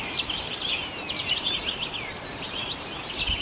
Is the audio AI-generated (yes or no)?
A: no